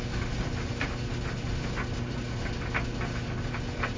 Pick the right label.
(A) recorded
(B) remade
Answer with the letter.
A